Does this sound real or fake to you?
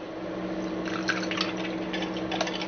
real